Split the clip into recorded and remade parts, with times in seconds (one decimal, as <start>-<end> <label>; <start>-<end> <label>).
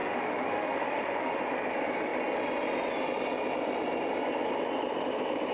0.0-1.4 remade; 1.4-5.5 recorded